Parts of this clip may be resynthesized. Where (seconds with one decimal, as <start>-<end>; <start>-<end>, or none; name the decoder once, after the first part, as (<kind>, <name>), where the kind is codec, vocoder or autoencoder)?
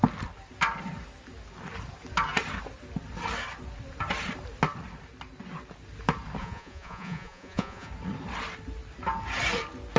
6.4-7.9 (vocoder, Vocos)